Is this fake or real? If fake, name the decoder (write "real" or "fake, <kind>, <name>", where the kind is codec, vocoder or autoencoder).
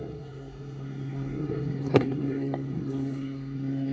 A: fake, codec, SNAC